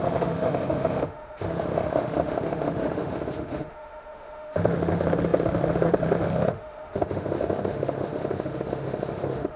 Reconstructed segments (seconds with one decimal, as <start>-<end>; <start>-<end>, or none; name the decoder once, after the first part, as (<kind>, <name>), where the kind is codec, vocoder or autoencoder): 0.0-9.6 (autoencoder, DAC-VAE)